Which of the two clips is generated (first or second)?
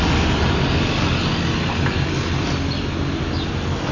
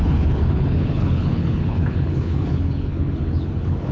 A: second